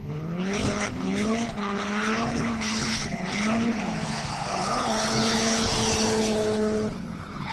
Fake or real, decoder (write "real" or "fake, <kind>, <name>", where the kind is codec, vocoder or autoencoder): fake, codec, HILCodec